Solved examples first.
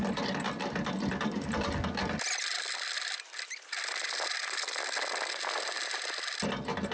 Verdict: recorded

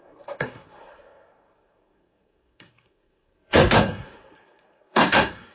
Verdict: remade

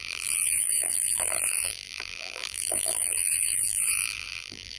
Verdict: remade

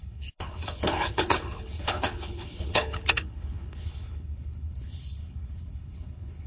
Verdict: remade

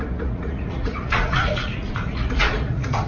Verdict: remade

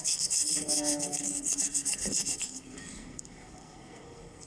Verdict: remade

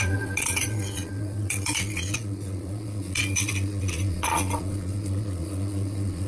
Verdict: remade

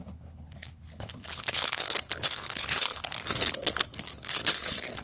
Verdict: remade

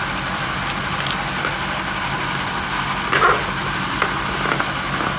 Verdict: recorded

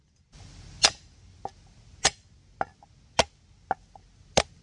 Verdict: recorded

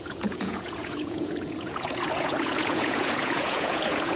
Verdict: remade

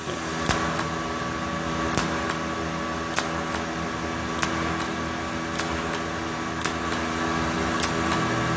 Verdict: recorded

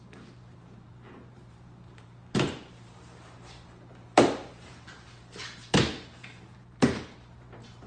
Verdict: remade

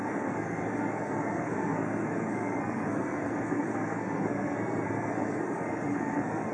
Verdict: remade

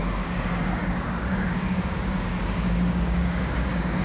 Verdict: remade